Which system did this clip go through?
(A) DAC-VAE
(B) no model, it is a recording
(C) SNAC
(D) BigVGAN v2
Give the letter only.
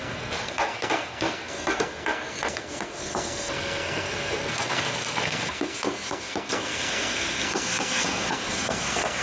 C